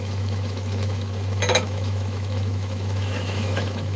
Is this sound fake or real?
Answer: fake